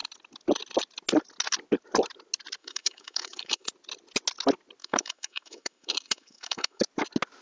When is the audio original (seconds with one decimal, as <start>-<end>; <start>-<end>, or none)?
0.0-2.6; 3.7-4.8; 6.8-7.4